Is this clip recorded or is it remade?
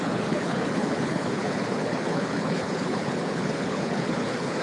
remade